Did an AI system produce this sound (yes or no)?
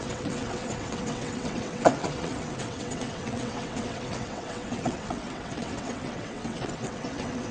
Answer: yes